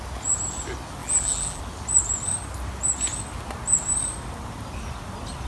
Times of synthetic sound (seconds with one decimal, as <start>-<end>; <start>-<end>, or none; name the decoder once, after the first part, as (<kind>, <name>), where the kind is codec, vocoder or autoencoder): 1.0-1.6 (vocoder, BigVGAN v2)